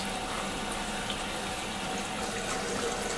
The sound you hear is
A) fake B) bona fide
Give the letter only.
B